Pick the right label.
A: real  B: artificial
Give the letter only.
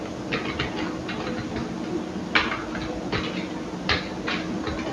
A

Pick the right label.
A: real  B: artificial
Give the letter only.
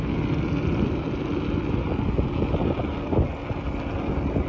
A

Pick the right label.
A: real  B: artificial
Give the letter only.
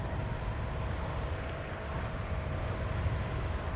A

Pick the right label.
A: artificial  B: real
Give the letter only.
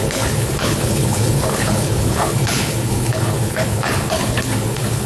A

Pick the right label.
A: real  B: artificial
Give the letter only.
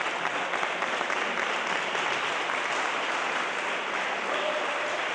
A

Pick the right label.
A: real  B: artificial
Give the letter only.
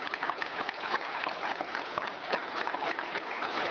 B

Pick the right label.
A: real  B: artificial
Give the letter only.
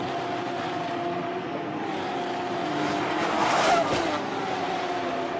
A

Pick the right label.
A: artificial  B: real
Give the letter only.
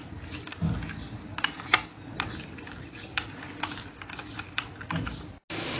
B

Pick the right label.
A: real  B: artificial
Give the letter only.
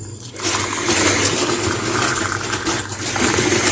A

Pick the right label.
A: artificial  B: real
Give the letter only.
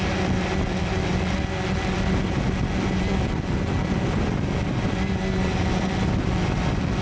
B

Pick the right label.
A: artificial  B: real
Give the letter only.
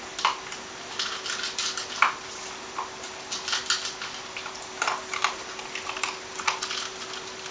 B